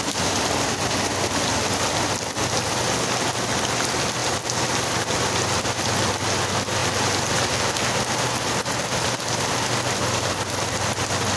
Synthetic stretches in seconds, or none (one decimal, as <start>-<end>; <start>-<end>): 6.8-7.5